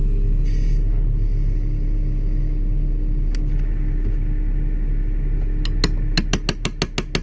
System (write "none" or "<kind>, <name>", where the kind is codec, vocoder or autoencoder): none